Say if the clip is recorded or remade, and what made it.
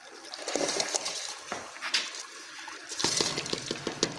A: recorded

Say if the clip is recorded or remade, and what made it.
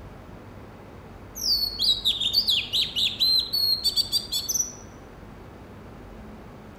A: recorded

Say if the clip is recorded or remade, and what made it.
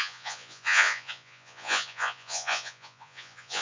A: remade, vocoder, Vocos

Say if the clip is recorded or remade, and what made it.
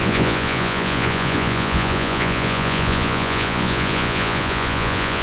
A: remade, vocoder, Vocos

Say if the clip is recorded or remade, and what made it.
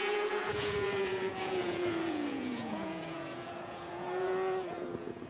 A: remade, vocoder, Vocos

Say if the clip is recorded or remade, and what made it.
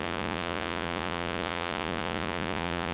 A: remade, vocoder, Vocos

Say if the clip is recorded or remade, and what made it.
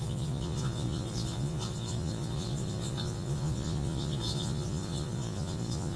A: remade, vocoder, Vocos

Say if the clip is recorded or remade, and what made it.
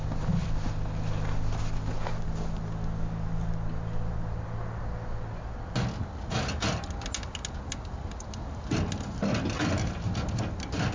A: recorded